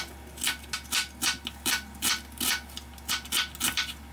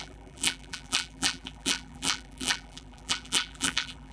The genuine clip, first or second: first